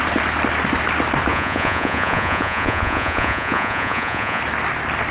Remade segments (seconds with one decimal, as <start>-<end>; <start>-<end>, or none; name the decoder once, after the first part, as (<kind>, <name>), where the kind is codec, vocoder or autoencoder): 1.3-4.4 (vocoder, Vocos)

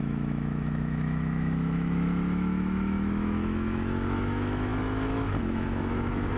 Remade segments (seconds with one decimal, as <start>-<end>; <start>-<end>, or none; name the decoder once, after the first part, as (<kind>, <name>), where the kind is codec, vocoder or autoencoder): 0.0-6.4 (autoencoder, DAC-VAE)

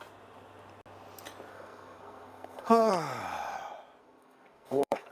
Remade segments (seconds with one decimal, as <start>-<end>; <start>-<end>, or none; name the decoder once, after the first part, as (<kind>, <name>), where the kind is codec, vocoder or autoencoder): 1.5-2.9 (codec, SNAC); 4.0-5.1

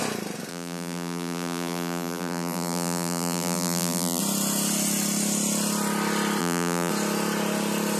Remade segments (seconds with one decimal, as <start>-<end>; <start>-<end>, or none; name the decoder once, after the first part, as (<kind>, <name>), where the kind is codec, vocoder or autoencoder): 0.5-4.2 (vocoder, BigVGAN v2); 6.4-6.9